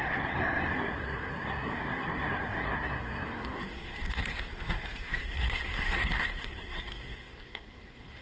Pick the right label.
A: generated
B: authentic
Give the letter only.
A